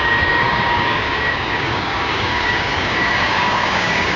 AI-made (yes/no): yes